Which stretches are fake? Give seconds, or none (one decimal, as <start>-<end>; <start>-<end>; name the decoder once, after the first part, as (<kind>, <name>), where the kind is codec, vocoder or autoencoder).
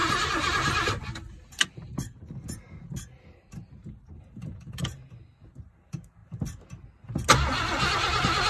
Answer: 0.0-1.0 (vocoder, BigVGAN v2); 3.8-4.8